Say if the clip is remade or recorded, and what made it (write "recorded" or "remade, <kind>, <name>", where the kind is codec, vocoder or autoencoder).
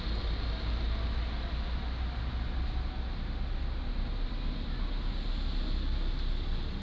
recorded